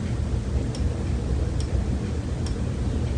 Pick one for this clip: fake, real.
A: real